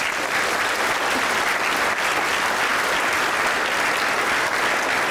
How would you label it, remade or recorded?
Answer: recorded